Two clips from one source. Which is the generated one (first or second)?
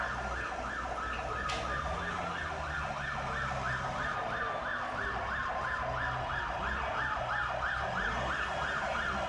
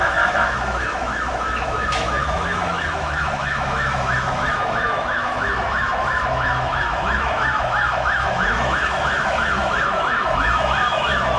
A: second